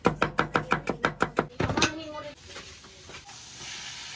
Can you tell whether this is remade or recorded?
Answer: recorded